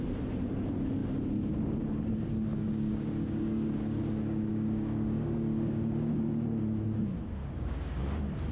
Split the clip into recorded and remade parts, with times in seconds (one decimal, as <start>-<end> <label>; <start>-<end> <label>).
0.0-2.6 recorded; 2.6-4.0 remade; 4.0-4.5 recorded; 4.5-6.4 remade; 6.4-7.4 recorded; 7.4-8.0 remade; 8.0-8.5 recorded